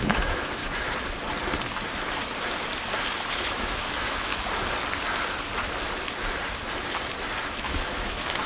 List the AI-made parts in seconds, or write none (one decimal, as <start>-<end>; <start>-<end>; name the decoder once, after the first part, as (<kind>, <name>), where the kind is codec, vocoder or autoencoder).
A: 0.0-0.6 (autoencoder, DAC-VAE); 3.3-4.3; 7.4-8.5